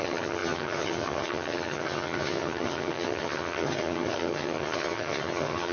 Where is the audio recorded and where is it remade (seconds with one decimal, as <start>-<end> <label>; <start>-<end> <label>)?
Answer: 0.0-5.7 remade